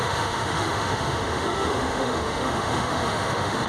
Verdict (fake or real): fake